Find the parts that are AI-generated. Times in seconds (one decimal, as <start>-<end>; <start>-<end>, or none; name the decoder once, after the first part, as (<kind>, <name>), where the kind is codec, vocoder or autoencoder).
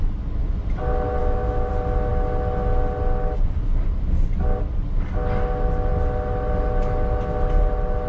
1.2-1.7 (autoencoder, DAC-VAE)